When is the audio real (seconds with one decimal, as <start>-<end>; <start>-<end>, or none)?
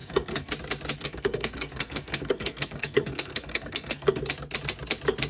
0.5-1.0; 4.2-5.3